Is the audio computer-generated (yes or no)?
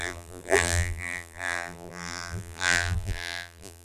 yes